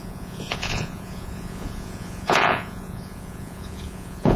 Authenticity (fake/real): fake